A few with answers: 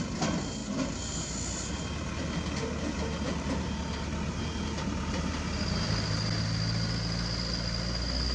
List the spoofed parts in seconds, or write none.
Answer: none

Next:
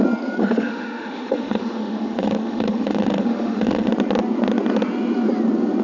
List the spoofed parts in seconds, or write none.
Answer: 0.4-3.9

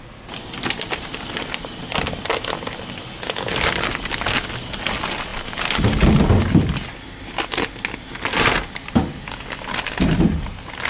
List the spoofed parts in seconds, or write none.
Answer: none